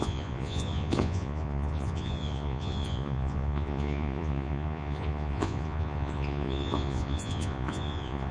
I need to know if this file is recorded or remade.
remade